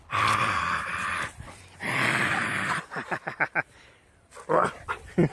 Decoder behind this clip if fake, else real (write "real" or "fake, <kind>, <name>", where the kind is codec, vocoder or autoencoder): fake, vocoder, BigVGAN v2